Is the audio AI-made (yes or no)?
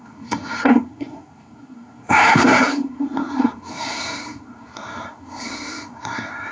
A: yes